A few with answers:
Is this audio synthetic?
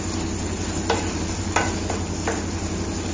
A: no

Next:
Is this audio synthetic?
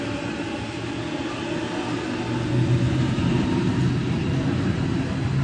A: no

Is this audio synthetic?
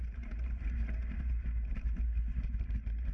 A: yes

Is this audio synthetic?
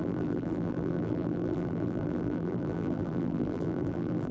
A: yes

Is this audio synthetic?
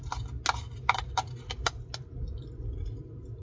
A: no